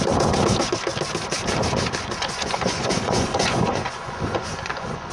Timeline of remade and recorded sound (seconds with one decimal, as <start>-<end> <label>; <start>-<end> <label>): 0.0-2.0 recorded; 2.0-5.1 remade